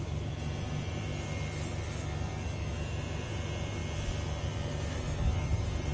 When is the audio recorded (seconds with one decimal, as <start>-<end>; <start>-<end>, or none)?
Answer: 1.1-2.7; 3.8-4.7

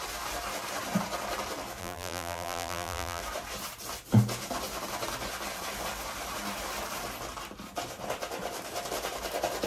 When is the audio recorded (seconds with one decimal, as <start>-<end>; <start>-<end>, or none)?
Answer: 0.0-1.8; 3.2-9.7

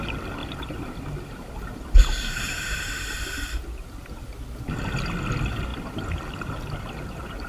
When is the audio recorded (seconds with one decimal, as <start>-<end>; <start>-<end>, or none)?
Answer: 0.0-0.4; 4.0-7.5